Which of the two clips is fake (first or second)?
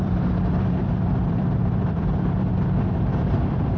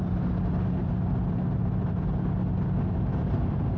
first